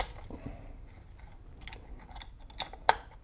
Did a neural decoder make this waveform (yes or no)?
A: no